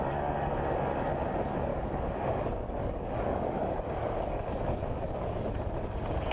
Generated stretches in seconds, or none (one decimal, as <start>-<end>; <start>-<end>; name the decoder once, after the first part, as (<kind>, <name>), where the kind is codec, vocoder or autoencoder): 1.7-5.5 (codec, DAC)